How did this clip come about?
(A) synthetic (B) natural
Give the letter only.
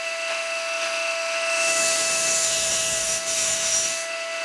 A